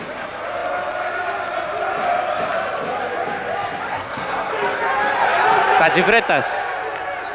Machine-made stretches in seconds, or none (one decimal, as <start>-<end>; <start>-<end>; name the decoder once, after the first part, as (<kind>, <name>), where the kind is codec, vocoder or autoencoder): 3.9-4.5 (codec, SNAC)